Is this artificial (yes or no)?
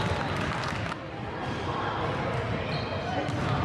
no